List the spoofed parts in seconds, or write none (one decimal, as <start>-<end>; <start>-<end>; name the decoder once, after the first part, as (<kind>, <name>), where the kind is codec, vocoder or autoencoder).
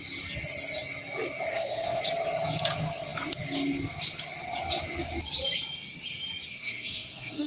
1.5-2.0 (codec, SNAC); 6.5-7.5